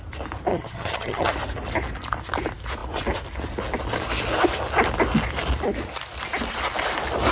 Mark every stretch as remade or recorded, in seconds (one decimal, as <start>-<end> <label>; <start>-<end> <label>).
0.0-0.5 recorded; 0.5-1.3 remade; 1.3-7.3 recorded